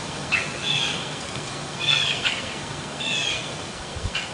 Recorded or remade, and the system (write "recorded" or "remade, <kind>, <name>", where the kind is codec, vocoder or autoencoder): remade, codec, SNAC